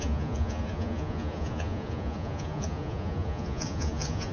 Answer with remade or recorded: remade